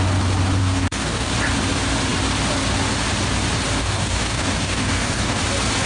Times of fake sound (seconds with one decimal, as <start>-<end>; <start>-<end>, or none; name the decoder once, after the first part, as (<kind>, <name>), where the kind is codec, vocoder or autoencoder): 0.6-1.3 (codec, DAC); 3.8-5.4